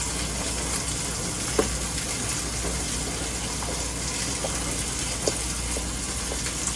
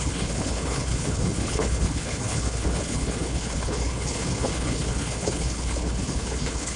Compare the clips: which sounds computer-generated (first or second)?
second